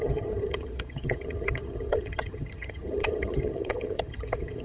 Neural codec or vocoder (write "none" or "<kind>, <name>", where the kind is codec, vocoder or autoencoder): vocoder, HiFi-GAN